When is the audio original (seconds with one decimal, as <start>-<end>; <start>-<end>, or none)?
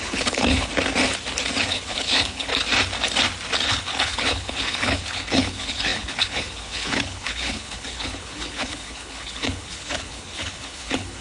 0.7-1.7; 2.5-3.7